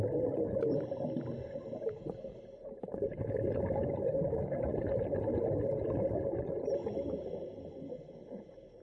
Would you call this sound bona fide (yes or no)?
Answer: yes